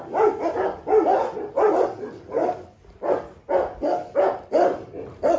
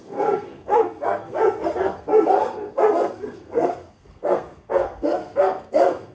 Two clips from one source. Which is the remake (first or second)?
second